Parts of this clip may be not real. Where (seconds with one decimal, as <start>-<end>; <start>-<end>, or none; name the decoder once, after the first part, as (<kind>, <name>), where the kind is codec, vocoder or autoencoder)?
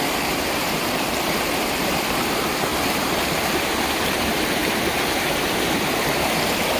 2.7-5.1 (vocoder, BigVGAN v2)